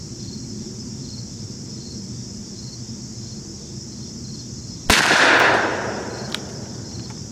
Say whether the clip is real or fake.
real